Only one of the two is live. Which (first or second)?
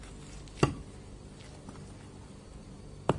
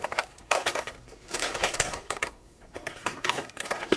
first